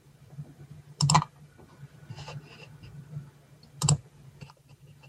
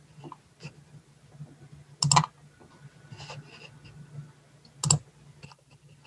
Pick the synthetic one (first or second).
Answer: first